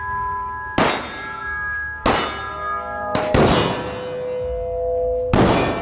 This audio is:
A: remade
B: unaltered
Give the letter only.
B